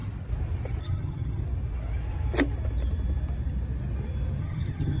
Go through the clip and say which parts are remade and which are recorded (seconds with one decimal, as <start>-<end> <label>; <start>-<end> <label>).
0.0-0.8 recorded; 0.8-1.4 remade; 1.4-4.4 recorded; 4.4-5.0 remade